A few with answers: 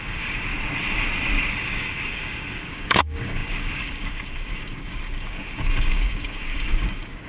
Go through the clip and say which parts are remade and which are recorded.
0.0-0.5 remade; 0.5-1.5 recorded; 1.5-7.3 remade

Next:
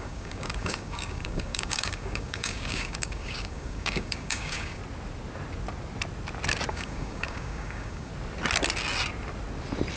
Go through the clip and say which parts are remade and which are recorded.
0.0-4.8 remade; 4.8-6.7 recorded; 6.7-8.1 remade; 8.1-10.0 recorded

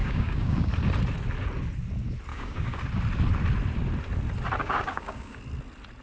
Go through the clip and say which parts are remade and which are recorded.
0.0-0.7 remade; 0.7-2.3 recorded; 2.3-2.8 remade; 2.8-4.6 recorded; 4.6-5.4 remade; 5.4-6.0 recorded

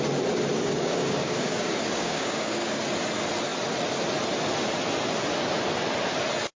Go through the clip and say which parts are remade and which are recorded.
0.0-0.5 recorded; 0.5-2.8 remade; 2.8-6.6 recorded